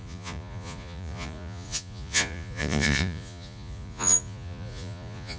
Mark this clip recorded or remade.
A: remade